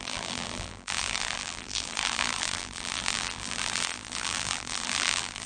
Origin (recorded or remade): remade